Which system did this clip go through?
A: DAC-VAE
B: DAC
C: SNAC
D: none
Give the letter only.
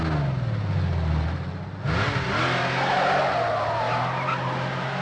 D